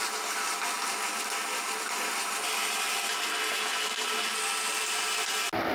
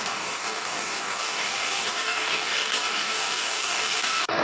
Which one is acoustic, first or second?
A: first